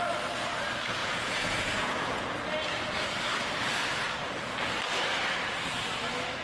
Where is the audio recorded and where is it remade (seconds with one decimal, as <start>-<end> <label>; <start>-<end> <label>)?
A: 0.0-1.0 recorded; 1.0-2.3 remade; 2.3-6.4 recorded